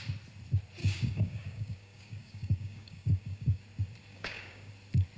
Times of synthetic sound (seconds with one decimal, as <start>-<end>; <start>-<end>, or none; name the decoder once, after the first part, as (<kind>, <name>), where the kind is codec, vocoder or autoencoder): 0.8-3.6 (codec, DAC); 4.1-4.7